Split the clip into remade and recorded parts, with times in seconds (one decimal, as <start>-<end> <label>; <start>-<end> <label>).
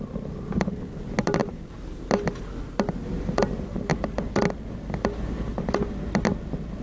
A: 0.0-1.4 recorded; 1.4-2.0 remade; 2.0-6.8 recorded